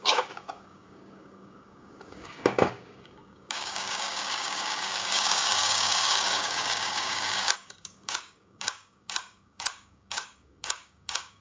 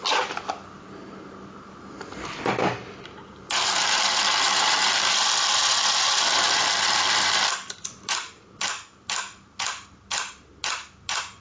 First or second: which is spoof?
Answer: first